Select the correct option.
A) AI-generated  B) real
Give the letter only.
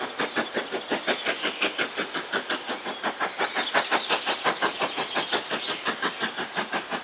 B